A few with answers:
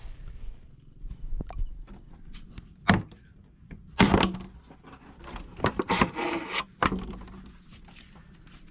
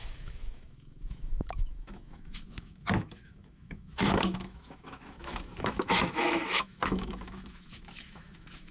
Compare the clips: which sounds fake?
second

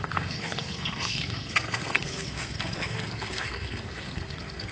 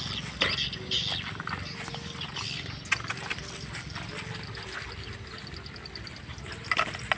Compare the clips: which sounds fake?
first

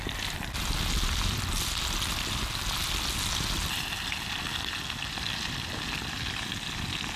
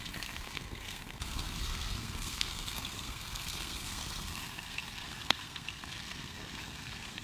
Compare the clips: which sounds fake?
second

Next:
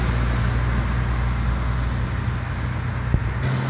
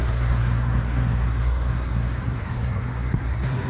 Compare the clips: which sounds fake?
second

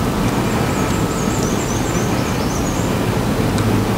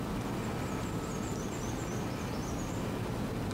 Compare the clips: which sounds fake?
first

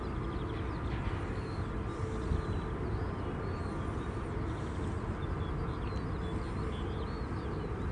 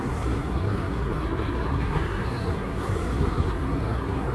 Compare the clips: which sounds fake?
second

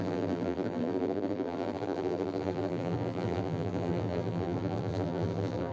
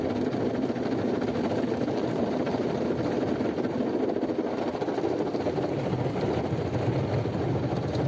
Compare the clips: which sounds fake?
first